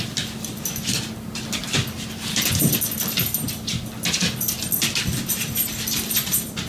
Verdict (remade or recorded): recorded